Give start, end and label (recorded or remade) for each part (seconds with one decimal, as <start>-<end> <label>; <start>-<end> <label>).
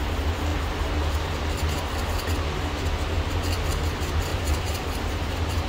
0.0-4.3 recorded; 4.3-5.7 remade